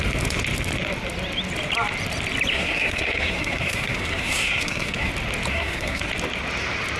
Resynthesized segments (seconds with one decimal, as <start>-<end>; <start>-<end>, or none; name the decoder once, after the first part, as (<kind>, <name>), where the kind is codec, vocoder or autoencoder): 2.5-5.1 (codec, SNAC); 5.5-6.0